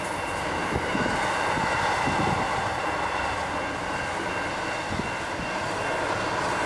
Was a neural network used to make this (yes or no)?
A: no